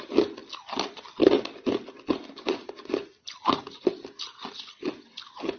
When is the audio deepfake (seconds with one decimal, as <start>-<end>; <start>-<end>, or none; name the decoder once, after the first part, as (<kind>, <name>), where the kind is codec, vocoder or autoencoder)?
none